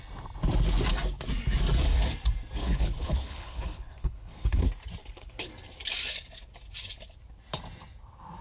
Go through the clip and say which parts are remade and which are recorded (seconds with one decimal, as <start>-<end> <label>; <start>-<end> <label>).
0.0-2.6 recorded; 2.6-4.6 remade; 4.6-5.0 recorded; 5.0-5.5 remade; 5.5-8.4 recorded